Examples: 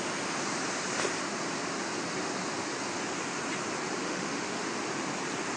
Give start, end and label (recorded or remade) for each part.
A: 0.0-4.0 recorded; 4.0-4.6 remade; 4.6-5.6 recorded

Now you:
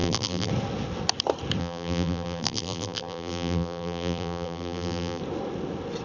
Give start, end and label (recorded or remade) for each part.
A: 0.0-0.5 remade; 0.5-1.6 recorded; 1.6-5.2 remade; 5.2-6.0 recorded

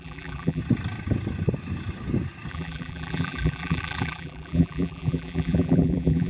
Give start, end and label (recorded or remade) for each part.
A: 0.0-0.6 remade; 0.6-2.5 recorded; 2.5-6.3 remade